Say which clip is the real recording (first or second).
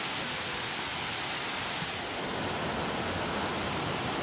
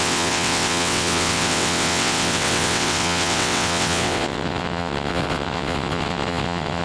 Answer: first